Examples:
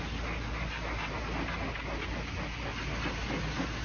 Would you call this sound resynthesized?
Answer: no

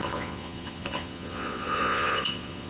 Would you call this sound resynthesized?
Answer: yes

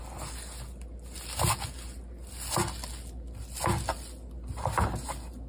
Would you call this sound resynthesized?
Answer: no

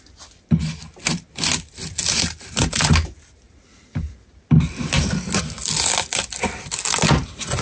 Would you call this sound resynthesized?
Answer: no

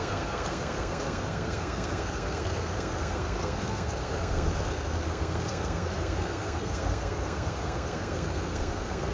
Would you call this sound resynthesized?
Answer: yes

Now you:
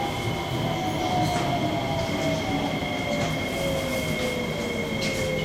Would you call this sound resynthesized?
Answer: no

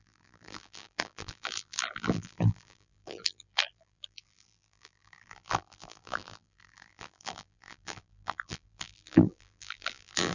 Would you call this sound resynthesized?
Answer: yes